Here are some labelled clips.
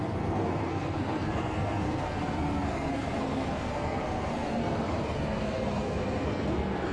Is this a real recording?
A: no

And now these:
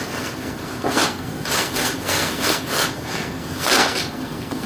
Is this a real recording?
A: no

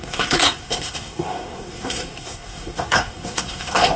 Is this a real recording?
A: no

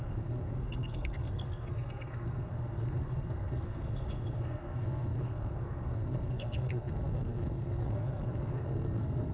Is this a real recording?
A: no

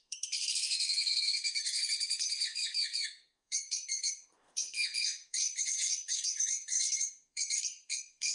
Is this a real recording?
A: no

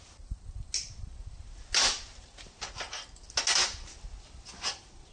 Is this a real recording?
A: yes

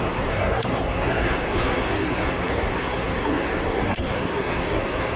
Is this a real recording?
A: no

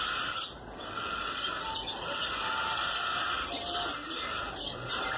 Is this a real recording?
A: yes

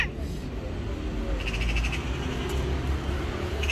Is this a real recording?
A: yes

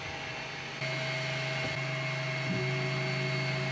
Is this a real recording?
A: yes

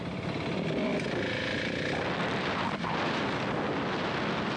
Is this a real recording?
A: yes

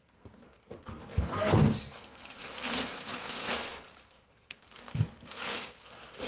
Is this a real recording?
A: no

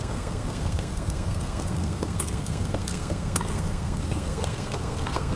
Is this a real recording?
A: no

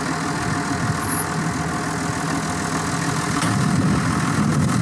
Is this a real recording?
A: yes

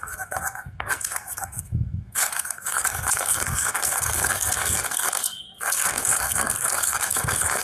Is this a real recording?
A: no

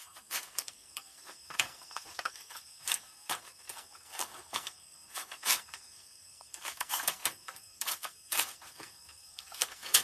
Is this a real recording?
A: no